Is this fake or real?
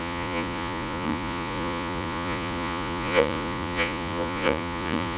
fake